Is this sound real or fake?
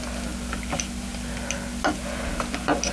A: real